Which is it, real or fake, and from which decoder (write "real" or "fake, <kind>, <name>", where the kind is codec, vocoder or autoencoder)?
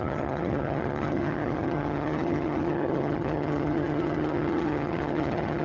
fake, vocoder, HiFi-GAN